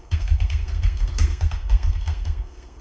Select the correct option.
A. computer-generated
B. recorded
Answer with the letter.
A